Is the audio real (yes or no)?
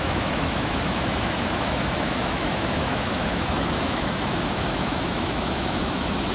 no